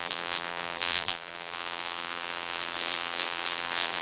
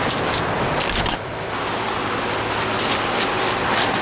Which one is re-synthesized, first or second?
first